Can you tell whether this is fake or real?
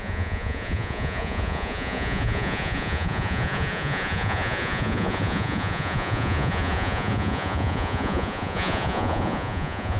fake